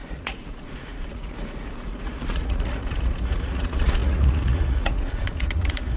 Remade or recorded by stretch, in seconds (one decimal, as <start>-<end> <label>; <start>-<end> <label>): 0.0-6.0 remade